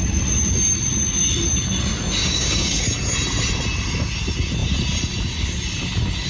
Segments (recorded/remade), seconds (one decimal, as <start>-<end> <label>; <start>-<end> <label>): 0.0-2.2 recorded; 2.2-2.8 remade; 2.8-6.3 recorded